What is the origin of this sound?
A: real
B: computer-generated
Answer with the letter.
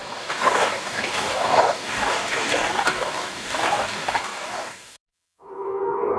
B